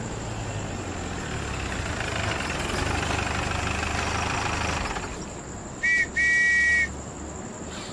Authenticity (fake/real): real